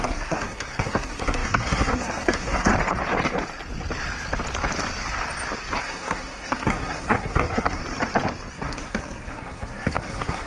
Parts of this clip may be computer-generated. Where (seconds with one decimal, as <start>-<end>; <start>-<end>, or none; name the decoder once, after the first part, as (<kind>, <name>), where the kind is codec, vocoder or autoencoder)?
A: 0.0-2.7 (codec, SNAC); 5.8-7.8; 8.5-10.5